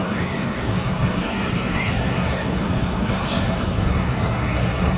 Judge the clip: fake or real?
fake